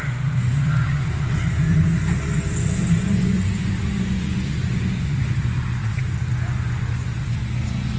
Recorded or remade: remade